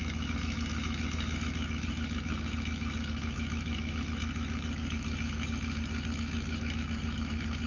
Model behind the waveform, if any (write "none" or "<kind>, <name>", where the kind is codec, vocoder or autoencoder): autoencoder, DAC-VAE